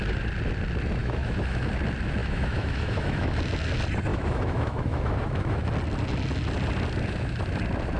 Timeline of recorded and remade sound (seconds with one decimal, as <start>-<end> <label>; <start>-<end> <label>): 0.0-1.0 recorded; 1.0-1.7 remade; 1.7-2.2 recorded; 2.2-3.4 remade; 3.4-4.1 recorded; 4.1-5.7 remade; 5.7-8.0 recorded